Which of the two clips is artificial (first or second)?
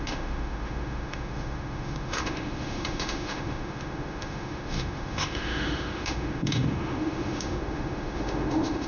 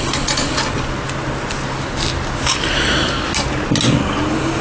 first